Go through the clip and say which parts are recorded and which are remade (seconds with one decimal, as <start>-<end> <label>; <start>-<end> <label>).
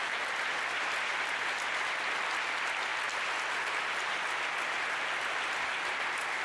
0.0-6.4 recorded